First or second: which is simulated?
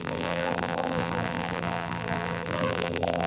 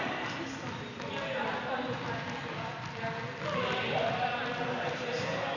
first